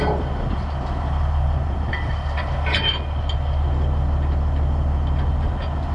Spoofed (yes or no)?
no